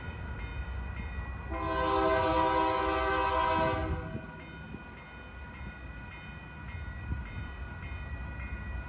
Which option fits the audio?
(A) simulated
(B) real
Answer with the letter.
B